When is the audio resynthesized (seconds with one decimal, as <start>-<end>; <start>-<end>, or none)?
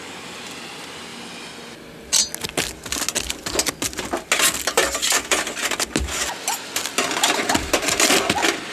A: none